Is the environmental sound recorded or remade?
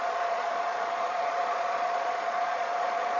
remade